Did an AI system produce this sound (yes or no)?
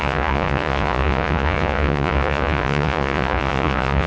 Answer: yes